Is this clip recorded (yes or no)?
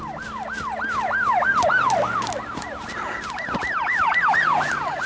yes